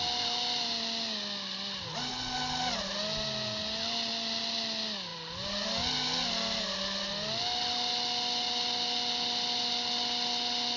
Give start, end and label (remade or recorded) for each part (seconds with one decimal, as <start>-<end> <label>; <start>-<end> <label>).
0.0-10.8 recorded